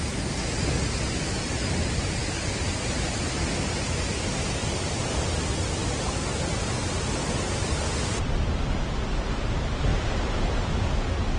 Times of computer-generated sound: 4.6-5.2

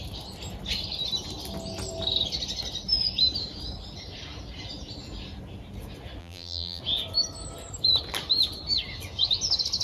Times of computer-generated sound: 6.2-6.8